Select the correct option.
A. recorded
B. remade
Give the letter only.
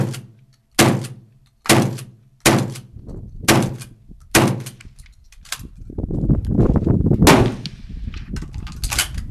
A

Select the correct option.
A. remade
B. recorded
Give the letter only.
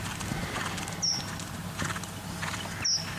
B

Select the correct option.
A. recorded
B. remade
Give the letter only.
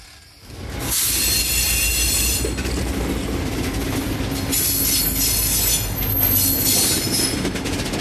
A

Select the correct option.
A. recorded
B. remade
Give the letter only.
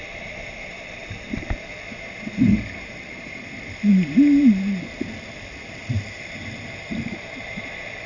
A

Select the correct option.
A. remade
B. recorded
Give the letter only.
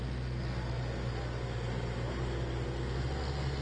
B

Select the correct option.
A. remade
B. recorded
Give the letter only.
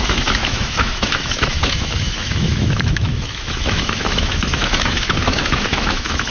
A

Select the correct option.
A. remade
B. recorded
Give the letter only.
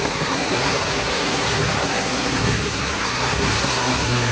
A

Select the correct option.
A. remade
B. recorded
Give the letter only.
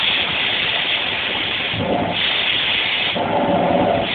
B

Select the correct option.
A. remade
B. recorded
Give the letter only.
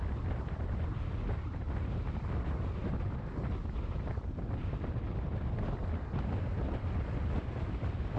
B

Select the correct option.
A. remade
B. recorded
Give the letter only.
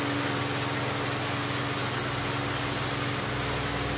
B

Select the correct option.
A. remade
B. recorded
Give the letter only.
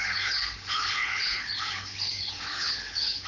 A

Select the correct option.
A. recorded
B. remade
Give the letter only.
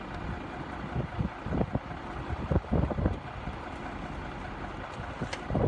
A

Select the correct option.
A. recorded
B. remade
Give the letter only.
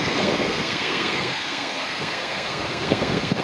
B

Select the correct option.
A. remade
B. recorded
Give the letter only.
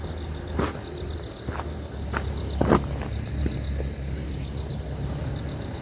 B